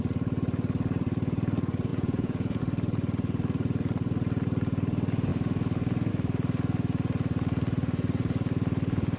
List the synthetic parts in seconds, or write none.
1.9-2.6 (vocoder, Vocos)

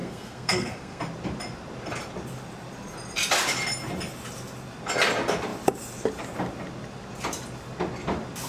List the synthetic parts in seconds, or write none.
0.0-1.0 (codec, SNAC)

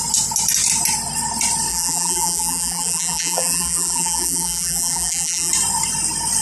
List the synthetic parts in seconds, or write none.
1.7-5.5 (vocoder, BigVGAN v2)